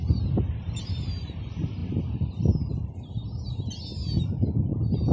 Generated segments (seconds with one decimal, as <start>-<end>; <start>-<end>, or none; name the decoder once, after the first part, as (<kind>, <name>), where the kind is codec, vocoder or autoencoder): none